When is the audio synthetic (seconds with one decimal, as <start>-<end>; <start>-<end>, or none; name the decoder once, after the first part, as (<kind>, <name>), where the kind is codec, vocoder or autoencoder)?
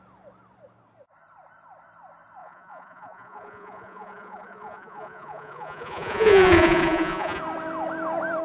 2.4-7.4 (vocoder, Vocos)